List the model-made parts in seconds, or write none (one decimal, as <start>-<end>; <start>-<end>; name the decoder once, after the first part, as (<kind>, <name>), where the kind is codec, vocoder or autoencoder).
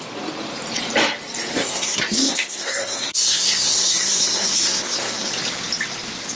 1.5-5.3 (codec, SNAC)